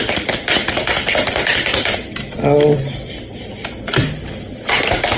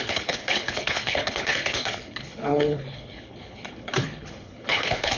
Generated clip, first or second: second